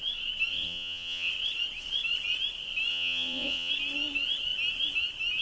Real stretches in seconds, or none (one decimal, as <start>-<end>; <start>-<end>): 0.0-0.5; 1.3-2.9; 3.7-5.4